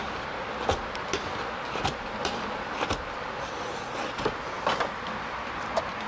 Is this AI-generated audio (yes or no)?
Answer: no